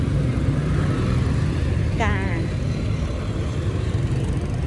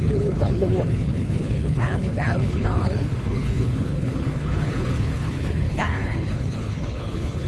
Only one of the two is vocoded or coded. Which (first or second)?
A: second